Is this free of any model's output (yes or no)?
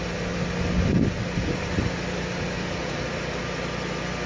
yes